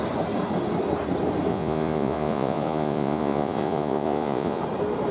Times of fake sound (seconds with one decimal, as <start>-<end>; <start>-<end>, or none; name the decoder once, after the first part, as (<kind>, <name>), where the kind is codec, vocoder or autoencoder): 1.5-4.6 (vocoder, Vocos)